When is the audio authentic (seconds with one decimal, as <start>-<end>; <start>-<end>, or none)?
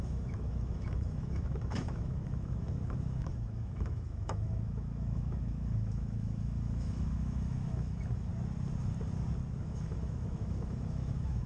8.3-9.6